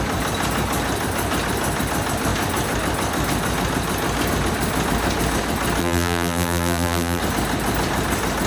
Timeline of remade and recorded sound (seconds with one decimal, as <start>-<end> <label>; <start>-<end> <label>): 0.0-5.8 recorded; 5.8-7.2 remade; 7.2-8.5 recorded